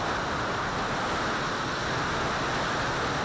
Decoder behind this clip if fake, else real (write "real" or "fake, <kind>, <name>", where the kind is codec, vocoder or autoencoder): real